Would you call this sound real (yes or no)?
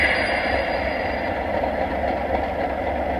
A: yes